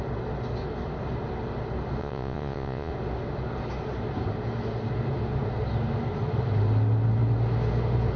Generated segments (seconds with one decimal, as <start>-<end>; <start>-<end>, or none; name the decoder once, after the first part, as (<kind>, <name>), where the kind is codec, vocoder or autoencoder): 2.0-2.9 (vocoder, Vocos)